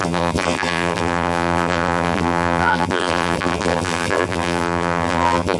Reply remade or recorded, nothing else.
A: remade